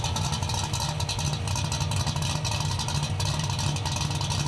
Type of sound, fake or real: real